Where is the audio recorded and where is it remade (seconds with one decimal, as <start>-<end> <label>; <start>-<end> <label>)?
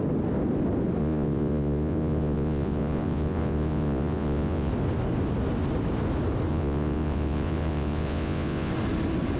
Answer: 0.0-1.0 recorded; 1.0-4.7 remade; 4.7-6.5 recorded; 6.5-8.7 remade; 8.7-9.4 recorded